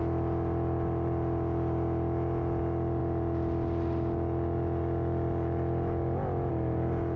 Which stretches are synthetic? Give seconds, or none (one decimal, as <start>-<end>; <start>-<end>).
none